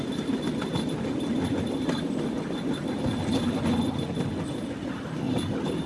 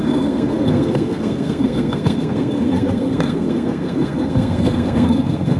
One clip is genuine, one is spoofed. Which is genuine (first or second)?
first